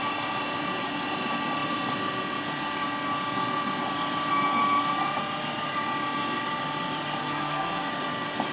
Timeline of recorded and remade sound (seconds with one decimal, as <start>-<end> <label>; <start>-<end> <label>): 0.0-7.2 recorded; 7.2-7.9 remade; 7.9-8.5 recorded